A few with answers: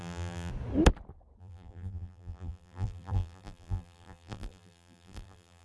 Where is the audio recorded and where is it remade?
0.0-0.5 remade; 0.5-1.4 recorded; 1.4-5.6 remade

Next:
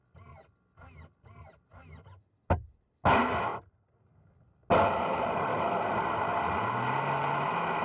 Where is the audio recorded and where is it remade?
0.0-7.8 recorded

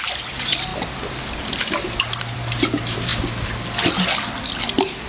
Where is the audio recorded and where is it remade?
0.0-0.7 remade; 0.7-2.2 recorded; 2.2-3.1 remade; 3.1-5.1 recorded

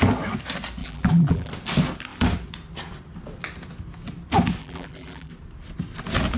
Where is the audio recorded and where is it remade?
0.0-0.8 recorded; 0.8-1.5 remade; 1.5-4.6 recorded; 4.6-5.3 remade; 5.3-6.4 recorded

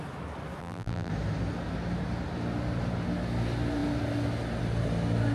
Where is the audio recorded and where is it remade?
0.0-0.6 recorded; 0.6-1.1 remade; 1.1-5.3 recorded

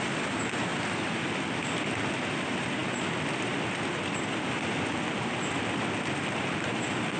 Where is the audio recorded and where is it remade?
0.0-7.2 recorded

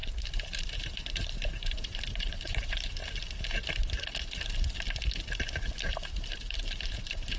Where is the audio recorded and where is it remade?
0.0-3.0 remade; 3.0-5.8 recorded; 5.8-7.4 remade

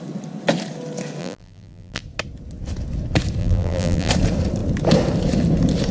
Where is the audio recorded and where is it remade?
0.0-1.2 recorded; 1.2-2.0 remade; 2.0-3.4 recorded; 3.4-4.1 remade; 4.1-5.9 recorded